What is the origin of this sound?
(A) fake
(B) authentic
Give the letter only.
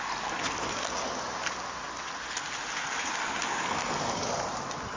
B